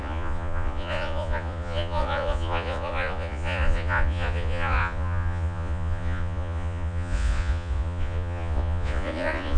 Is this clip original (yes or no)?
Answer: no